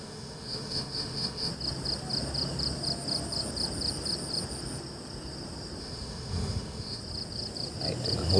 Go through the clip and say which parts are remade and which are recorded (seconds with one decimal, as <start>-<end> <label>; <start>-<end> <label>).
0.0-1.5 remade; 1.5-5.8 recorded; 5.8-7.0 remade; 7.0-8.4 recorded